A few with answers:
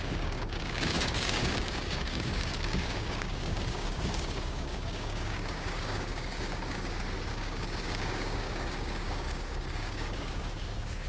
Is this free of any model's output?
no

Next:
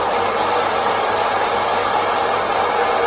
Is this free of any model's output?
yes